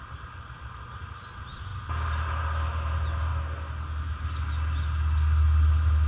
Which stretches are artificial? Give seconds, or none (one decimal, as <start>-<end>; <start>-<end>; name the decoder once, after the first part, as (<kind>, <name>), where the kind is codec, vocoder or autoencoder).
none